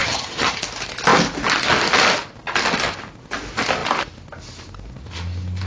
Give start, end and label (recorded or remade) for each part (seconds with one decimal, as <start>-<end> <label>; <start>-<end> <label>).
0.0-0.6 remade; 0.6-5.7 recorded